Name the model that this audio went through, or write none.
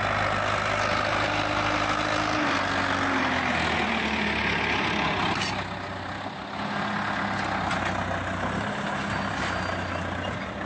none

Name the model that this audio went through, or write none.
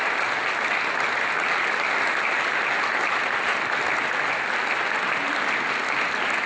none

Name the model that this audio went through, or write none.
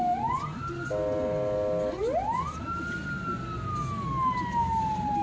none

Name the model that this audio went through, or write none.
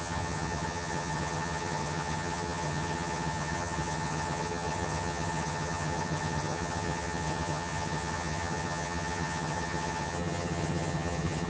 vocoder, HiFi-GAN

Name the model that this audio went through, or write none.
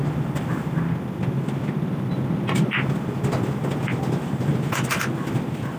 none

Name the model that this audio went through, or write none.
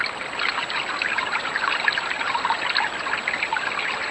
none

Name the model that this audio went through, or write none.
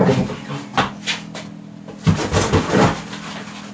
none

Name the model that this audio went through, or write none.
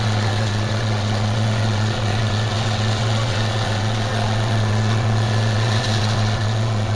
vocoder, WaveNeXt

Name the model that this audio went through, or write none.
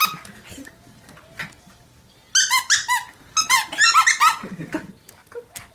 none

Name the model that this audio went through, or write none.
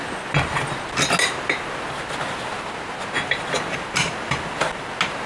none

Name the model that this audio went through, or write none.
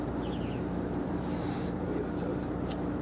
vocoder, BigVGAN v2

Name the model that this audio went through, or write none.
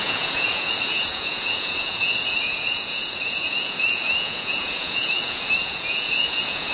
vocoder, Vocos